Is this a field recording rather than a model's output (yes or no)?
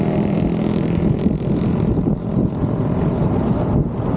no